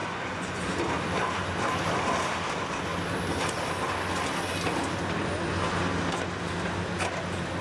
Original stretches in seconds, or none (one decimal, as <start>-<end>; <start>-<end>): 0.6-7.6